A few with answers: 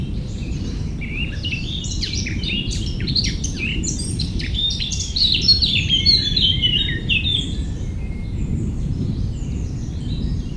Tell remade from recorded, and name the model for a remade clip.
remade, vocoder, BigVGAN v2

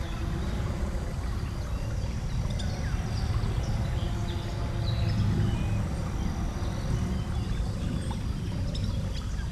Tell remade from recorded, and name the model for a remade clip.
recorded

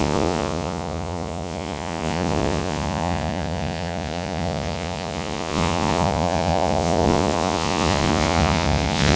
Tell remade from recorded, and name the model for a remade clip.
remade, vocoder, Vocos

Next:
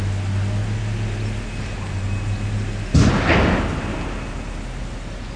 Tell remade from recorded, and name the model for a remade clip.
recorded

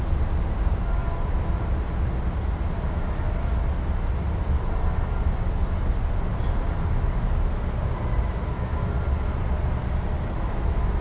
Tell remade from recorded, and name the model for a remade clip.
recorded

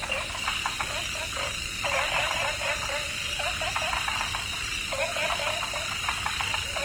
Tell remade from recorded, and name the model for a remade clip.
remade, vocoder, BigVGAN v2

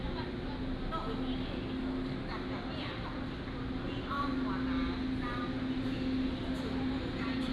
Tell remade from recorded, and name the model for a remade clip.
recorded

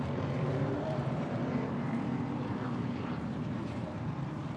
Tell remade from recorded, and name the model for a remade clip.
remade, vocoder, BigVGAN v2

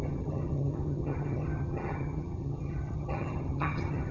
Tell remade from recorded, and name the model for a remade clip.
remade, vocoder, HiFi-GAN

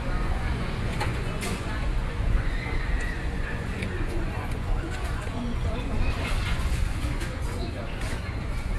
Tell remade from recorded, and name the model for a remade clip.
remade, vocoder, Vocos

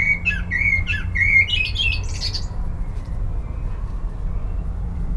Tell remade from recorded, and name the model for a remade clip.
recorded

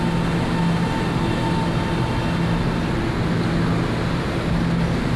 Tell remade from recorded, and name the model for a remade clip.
recorded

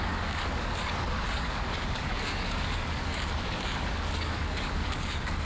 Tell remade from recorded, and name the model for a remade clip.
remade, codec, DAC